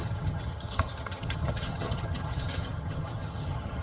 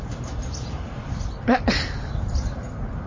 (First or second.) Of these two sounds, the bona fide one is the second